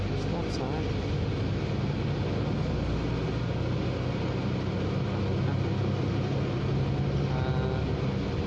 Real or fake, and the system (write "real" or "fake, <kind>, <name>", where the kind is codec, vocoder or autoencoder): real